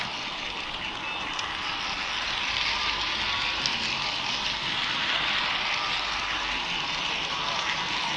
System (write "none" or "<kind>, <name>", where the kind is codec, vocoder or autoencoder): none